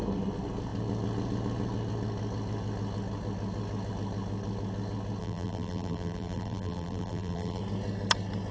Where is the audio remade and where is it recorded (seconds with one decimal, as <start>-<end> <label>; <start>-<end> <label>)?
0.0-5.2 recorded; 5.2-7.6 remade; 7.6-8.5 recorded